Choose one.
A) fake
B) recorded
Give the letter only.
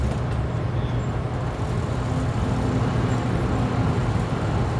B